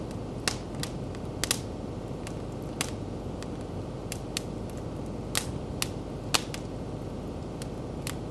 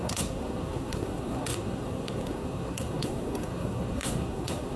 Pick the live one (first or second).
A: first